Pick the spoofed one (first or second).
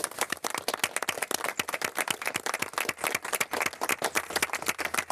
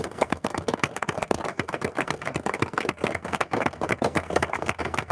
second